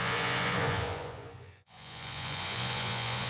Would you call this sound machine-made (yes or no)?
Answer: yes